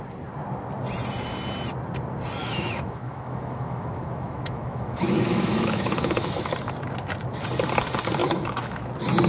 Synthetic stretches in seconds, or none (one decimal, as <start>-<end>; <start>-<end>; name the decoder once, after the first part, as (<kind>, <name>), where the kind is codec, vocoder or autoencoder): 2.4-6.5 (autoencoder, DAC-VAE); 8.2-8.9